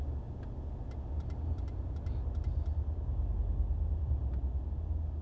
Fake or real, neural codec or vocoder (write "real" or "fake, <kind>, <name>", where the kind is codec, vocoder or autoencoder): real